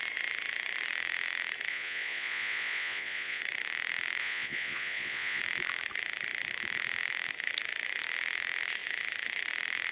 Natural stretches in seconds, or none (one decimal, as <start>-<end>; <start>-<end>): 0.0-1.7; 3.4-4.2; 5.4-9.9